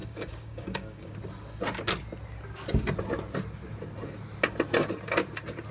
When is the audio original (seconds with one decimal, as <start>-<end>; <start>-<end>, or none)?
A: 1.1-5.7